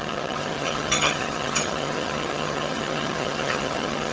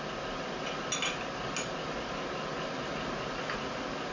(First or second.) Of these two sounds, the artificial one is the first